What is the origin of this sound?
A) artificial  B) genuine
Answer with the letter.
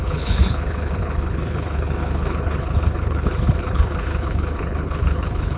A